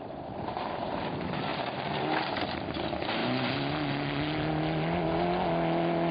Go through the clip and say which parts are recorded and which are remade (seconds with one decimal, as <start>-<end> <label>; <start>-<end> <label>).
0.0-6.1 recorded